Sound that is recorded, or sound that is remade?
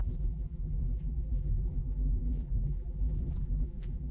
remade